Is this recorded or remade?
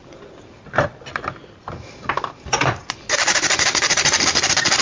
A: recorded